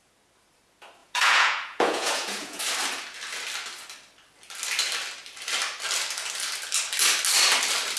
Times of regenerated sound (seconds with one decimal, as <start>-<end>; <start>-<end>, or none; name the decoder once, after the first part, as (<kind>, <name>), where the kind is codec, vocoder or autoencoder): 1.0-2.6 (vocoder, Vocos)